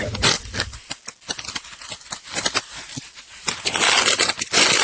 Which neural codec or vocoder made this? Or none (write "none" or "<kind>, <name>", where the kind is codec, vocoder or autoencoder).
none